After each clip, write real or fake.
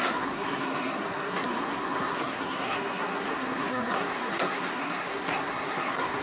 fake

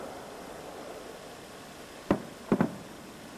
real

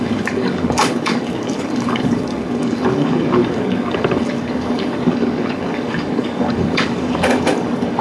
fake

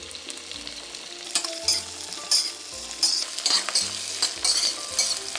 real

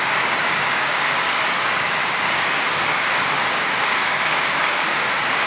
fake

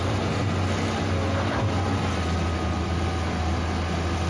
real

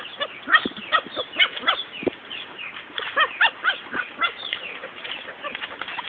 fake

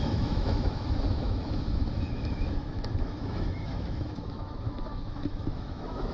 fake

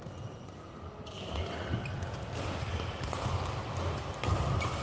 real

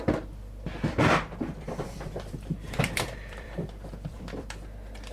fake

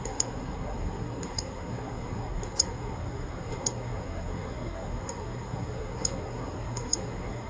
fake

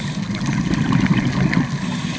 real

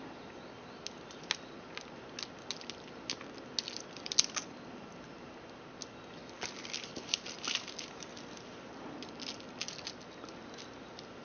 real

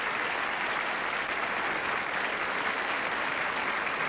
real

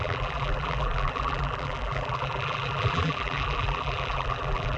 fake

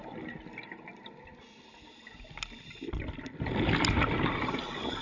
real